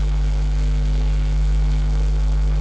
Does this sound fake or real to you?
fake